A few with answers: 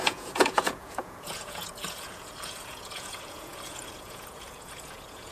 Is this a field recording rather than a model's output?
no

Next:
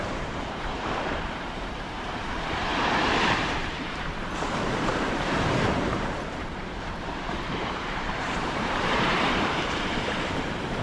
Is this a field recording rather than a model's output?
no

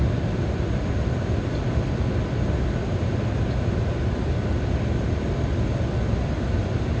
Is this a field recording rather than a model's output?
yes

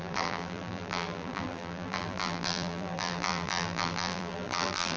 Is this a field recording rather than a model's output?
no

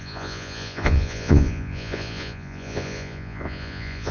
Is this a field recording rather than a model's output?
no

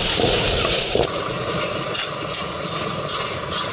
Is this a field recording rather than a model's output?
no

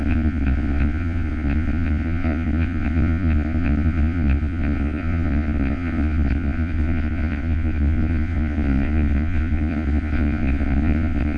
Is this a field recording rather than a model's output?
no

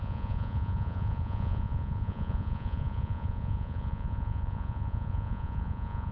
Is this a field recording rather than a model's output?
no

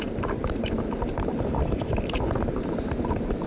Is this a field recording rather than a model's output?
no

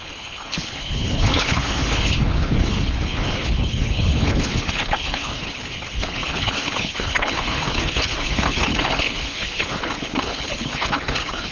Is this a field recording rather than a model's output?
no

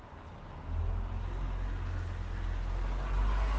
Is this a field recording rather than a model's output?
yes